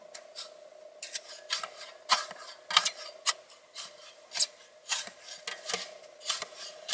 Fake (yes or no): no